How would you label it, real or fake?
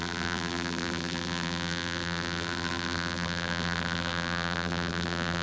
fake